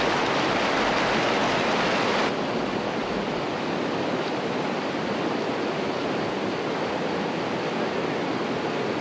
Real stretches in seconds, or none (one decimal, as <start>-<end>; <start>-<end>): 0.0-9.0